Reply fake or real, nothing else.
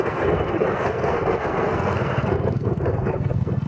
fake